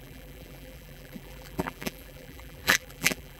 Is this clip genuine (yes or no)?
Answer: no